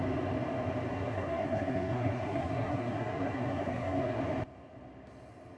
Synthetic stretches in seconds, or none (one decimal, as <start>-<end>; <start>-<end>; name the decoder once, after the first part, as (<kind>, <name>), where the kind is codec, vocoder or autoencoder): 0.9-4.2 (codec, SNAC)